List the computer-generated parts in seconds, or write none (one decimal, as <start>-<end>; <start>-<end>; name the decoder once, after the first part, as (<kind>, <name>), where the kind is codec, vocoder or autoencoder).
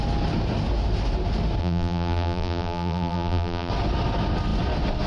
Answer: 1.6-3.7 (vocoder, BigVGAN v2)